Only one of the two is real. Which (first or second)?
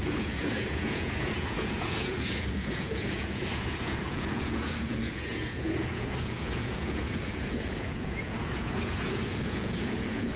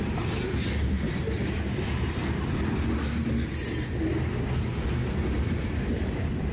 second